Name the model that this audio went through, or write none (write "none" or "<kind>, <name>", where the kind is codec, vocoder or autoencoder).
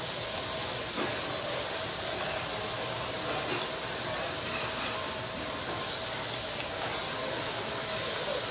none